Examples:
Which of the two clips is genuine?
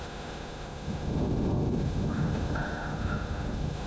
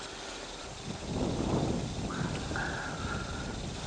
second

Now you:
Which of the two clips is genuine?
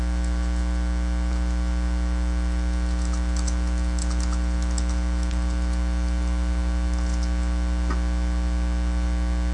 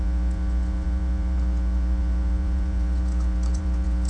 first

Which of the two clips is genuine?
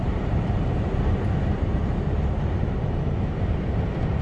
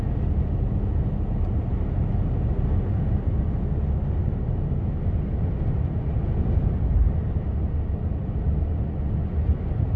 second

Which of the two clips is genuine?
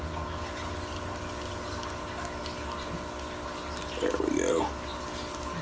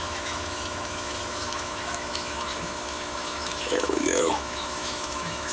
first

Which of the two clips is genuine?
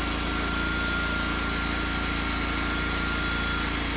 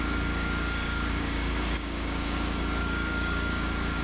first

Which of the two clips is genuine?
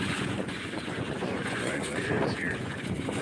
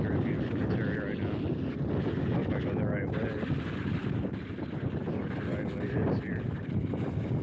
second